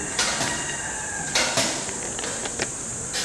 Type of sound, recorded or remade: remade